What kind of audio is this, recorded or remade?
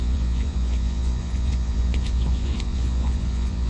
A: remade